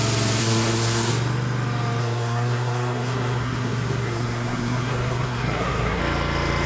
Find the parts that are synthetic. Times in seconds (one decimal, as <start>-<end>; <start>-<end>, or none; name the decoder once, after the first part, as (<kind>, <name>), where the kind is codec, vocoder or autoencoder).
0.4-1.1 (codec, SNAC); 2.0-6.0